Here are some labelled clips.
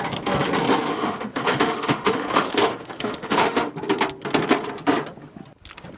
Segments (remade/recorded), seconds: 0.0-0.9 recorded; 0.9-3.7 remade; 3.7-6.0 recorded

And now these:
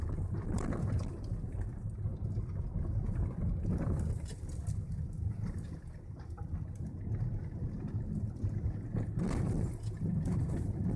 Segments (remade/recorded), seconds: 0.0-11.0 recorded

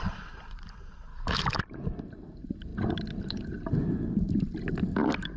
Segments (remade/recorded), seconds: 0.0-1.1 recorded; 1.1-1.6 remade; 1.6-5.4 recorded

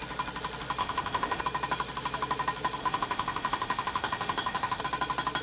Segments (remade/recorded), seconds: 0.0-0.8 recorded; 0.8-1.4 remade; 1.4-2.8 recorded; 2.8-4.8 remade; 4.8-5.4 recorded

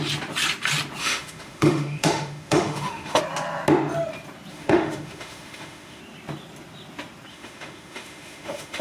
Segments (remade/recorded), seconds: 0.0-1.0 recorded; 1.0-3.2 remade; 3.2-4.5 recorded; 4.5-6.0 remade; 6.0-7.3 recorded; 7.3-8.8 remade

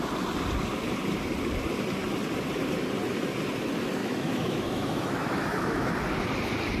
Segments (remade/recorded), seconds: 0.0-4.0 recorded; 4.0-5.9 remade; 5.9-6.8 recorded

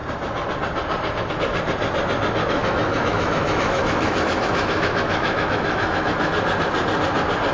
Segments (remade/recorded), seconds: 0.0-2.6 recorded; 2.6-6.3 remade; 6.3-7.5 recorded

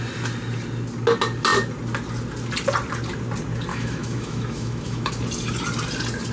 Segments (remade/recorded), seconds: 0.0-3.7 recorded; 3.7-5.1 remade; 5.1-6.3 recorded